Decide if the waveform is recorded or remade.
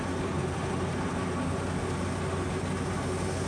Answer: recorded